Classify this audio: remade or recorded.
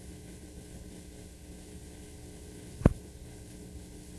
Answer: remade